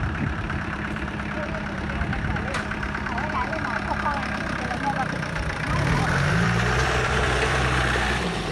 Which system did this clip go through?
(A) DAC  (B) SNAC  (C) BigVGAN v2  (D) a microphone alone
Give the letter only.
C